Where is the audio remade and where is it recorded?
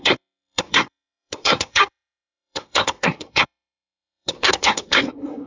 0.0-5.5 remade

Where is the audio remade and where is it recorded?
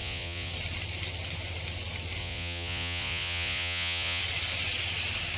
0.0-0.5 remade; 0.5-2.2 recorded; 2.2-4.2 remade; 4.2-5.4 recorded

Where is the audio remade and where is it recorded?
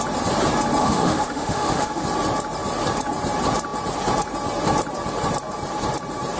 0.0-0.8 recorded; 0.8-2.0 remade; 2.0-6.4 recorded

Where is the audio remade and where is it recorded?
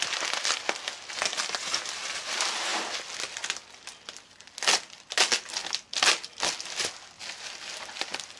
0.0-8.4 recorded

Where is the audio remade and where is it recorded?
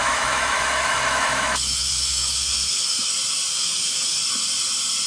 0.0-3.1 remade; 3.1-3.5 recorded; 3.5-4.2 remade; 4.2-5.1 recorded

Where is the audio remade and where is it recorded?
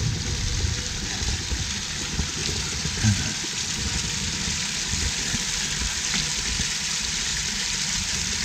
0.0-7.3 recorded; 7.3-7.8 remade; 7.8-8.4 recorded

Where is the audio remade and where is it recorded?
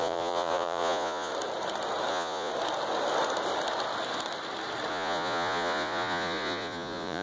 0.0-1.3 remade; 1.3-2.1 recorded; 2.1-2.5 remade; 2.5-4.9 recorded; 4.9-7.2 remade